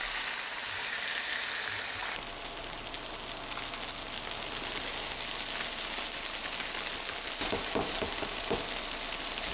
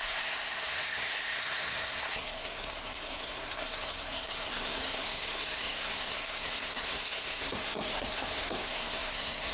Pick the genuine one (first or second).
first